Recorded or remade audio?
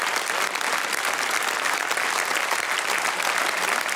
recorded